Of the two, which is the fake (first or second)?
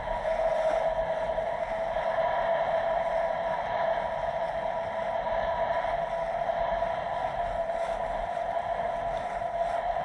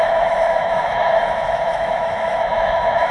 second